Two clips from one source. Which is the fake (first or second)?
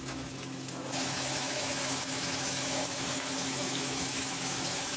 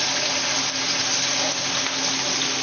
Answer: first